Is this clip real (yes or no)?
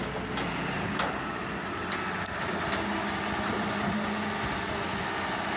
yes